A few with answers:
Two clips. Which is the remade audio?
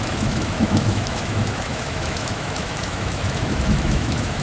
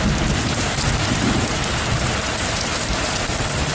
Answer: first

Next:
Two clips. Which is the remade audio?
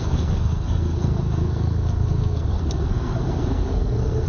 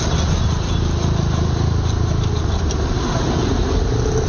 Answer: first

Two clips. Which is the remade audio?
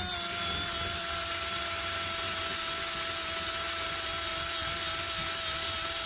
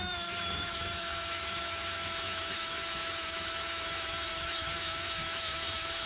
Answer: second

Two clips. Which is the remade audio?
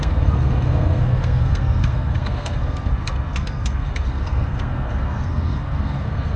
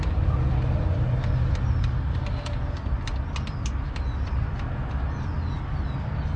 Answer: first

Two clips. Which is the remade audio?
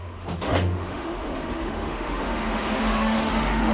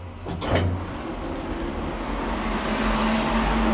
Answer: first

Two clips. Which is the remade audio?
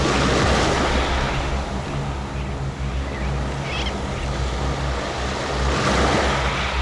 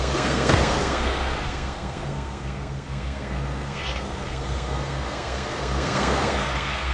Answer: second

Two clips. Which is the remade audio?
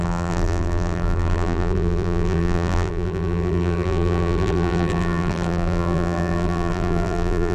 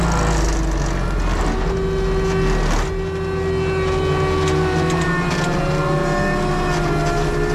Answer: first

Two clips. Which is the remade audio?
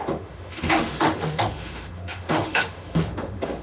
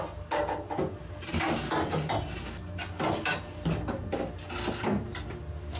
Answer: first